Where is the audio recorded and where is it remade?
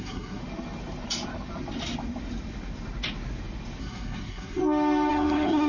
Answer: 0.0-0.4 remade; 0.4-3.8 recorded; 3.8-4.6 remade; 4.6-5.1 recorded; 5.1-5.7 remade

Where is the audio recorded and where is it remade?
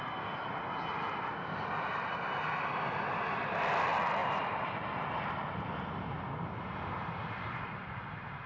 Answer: 0.0-4.2 recorded; 4.2-5.4 remade; 5.4-8.5 recorded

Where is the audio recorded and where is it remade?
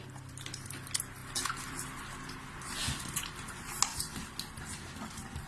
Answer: 0.0-5.5 recorded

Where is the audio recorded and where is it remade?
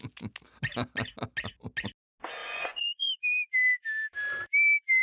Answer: 0.0-2.4 recorded; 2.4-3.1 remade; 3.1-5.0 recorded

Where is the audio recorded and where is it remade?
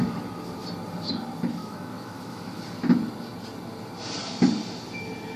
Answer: 0.0-1.6 recorded; 1.6-2.6 remade; 2.6-5.4 recorded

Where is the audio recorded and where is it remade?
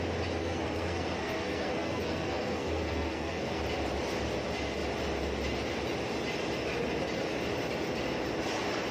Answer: 0.0-0.4 recorded; 0.4-3.6 remade; 3.6-8.9 recorded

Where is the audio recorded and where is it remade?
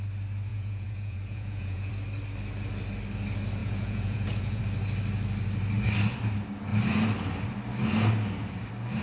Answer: 0.0-0.5 recorded; 0.5-1.9 remade; 1.9-3.6 recorded; 3.6-4.6 remade; 4.6-9.0 recorded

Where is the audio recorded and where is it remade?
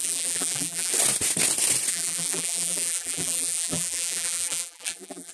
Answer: 0.0-0.9 remade; 0.9-1.9 recorded; 1.9-5.3 remade